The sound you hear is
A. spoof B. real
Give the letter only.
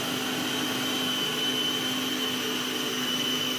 B